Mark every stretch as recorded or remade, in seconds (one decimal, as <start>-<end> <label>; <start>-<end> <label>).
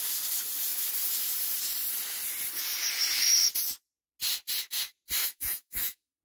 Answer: 0.0-5.2 recorded; 5.2-6.2 remade